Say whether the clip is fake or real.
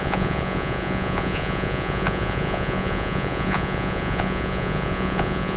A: fake